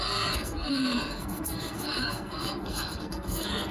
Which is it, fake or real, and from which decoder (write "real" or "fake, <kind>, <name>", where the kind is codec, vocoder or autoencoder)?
fake, codec, SNAC